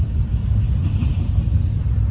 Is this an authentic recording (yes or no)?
yes